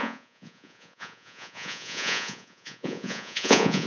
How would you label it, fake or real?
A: fake